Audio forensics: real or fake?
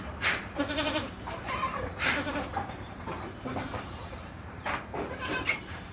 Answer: fake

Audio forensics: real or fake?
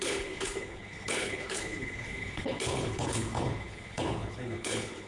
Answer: fake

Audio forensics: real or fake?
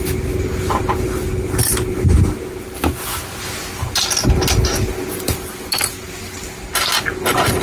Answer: real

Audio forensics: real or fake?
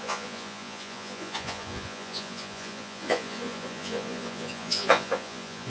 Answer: fake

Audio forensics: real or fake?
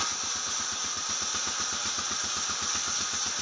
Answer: real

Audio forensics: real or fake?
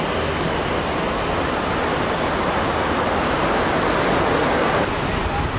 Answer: real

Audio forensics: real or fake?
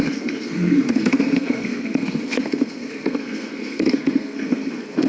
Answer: fake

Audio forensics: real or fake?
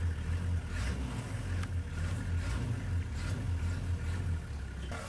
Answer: real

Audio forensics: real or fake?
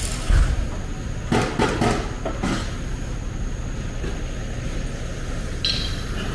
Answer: real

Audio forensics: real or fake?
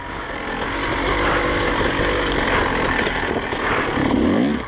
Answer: real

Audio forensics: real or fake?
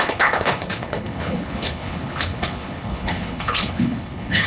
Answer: fake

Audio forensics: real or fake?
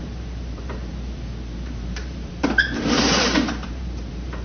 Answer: fake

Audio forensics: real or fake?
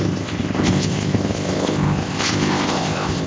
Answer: fake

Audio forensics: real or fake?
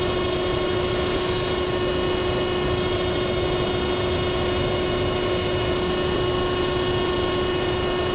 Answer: real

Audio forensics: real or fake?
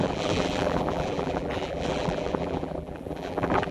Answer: fake